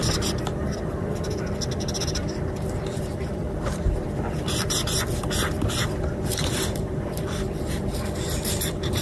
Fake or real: fake